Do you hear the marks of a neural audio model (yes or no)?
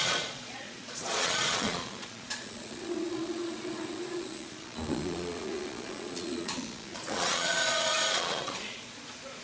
yes